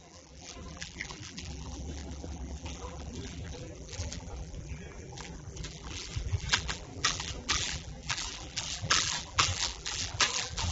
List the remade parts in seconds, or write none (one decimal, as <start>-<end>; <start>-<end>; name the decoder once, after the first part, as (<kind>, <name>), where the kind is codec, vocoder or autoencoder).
0.0-10.7 (vocoder, BigVGAN v2)